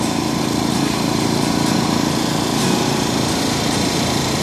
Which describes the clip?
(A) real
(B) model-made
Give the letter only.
B